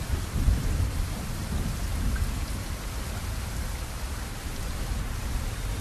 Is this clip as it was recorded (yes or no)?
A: yes